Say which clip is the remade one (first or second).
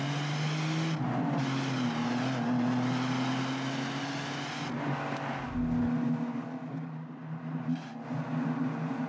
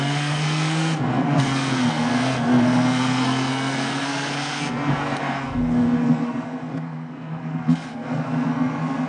second